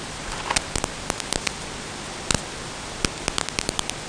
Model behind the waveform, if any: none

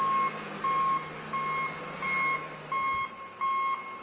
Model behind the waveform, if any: none